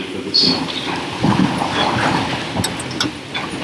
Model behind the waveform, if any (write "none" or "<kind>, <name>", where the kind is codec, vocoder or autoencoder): none